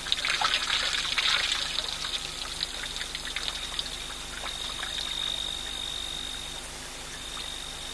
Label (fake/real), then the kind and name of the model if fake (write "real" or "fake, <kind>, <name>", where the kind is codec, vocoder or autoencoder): real